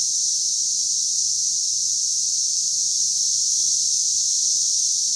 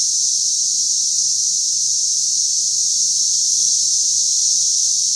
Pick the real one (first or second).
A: first